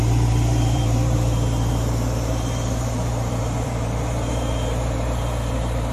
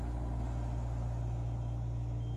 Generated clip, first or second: first